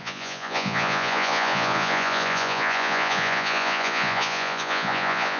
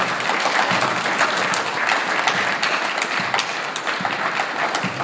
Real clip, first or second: second